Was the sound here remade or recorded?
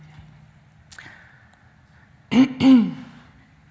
recorded